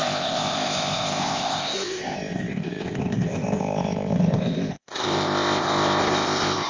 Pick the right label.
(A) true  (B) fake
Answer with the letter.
B